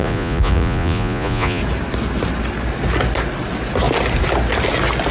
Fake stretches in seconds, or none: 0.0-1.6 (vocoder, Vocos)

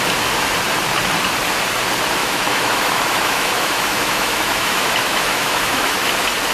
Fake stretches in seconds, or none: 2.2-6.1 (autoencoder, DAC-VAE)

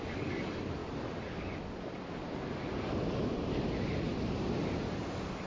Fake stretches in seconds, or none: none

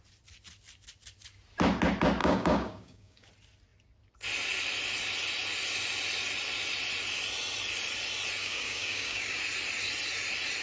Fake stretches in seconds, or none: 2.2-3.3 (codec, DAC); 8.4-9.4